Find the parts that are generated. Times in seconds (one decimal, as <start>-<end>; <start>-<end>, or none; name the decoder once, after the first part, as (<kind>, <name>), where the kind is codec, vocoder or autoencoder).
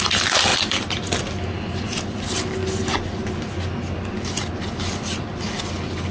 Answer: 0.5-1.2 (vocoder, BigVGAN v2)